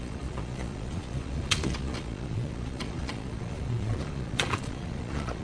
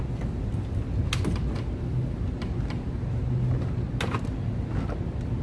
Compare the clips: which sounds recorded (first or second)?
second